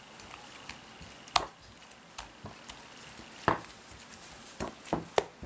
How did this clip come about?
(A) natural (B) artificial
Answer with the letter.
A